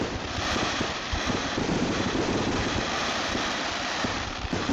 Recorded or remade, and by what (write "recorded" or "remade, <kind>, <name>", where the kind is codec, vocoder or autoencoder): remade, vocoder, BigVGAN v2